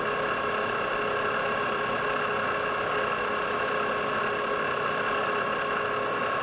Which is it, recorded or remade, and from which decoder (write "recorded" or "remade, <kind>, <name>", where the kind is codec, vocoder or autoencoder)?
recorded